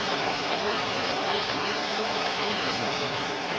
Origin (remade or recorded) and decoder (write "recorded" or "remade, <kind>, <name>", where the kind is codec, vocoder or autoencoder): remade, codec, SNAC